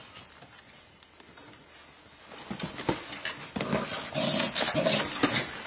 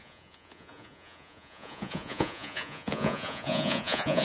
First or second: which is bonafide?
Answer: first